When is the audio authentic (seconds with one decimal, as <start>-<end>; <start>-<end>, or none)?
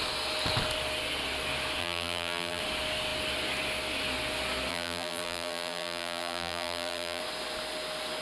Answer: 0.0-1.8; 2.6-4.7; 7.2-8.2